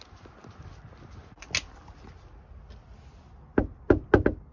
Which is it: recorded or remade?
recorded